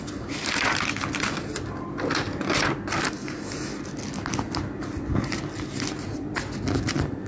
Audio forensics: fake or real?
real